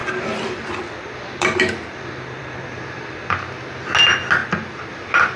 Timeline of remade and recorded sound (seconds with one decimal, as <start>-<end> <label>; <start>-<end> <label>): 0.0-3.2 remade; 3.2-4.4 recorded; 4.4-4.9 remade; 4.9-5.4 recorded